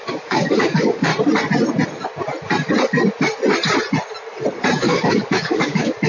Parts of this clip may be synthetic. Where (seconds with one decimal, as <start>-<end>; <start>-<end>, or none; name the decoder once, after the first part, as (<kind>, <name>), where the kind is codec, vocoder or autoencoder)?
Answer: 0.0-1.1 (codec, DAC); 4.8-6.1